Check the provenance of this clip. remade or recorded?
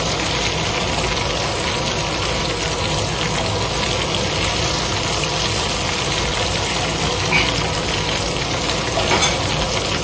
recorded